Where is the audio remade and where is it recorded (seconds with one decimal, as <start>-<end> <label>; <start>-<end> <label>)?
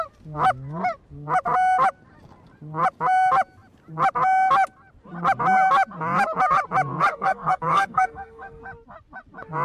0.0-7.1 recorded; 7.1-8.6 remade; 8.6-9.6 recorded